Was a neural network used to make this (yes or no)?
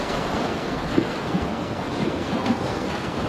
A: yes